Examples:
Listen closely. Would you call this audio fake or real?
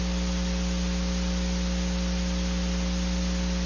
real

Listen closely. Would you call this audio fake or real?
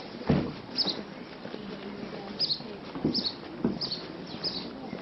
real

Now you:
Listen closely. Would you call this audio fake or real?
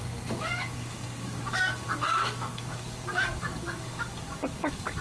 fake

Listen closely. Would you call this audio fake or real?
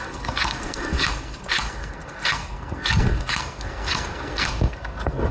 fake